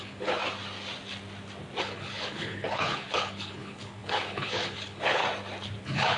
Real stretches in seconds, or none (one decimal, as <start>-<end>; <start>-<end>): 0.4-1.8; 5.2-5.8